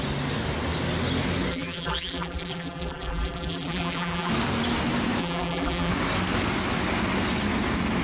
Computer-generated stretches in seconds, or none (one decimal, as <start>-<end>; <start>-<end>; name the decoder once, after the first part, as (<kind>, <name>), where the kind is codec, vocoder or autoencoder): 1.5-4.3 (vocoder, BigVGAN v2); 5.2-5.9